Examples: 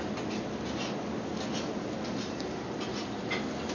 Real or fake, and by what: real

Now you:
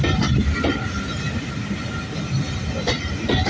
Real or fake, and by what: real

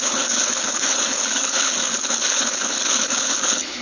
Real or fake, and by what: fake, codec, HILCodec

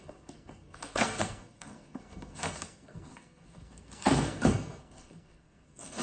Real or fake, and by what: fake, codec, SNAC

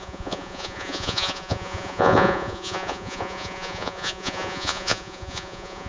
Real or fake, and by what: fake, vocoder, Vocos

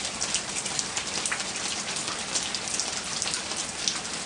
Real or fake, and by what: real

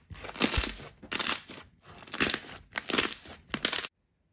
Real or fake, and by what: real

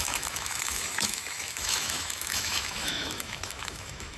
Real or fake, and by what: fake, autoencoder, DAC-VAE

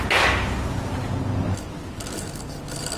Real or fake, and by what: real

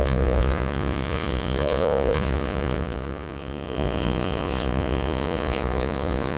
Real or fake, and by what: fake, vocoder, Vocos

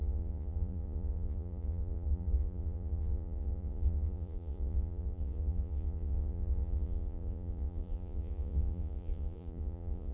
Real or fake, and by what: fake, vocoder, Vocos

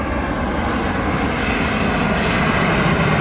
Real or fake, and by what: real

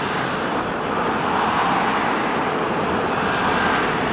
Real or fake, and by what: real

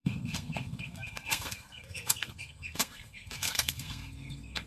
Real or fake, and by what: fake, codec, SNAC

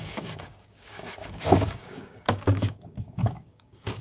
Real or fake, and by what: fake, codec, DAC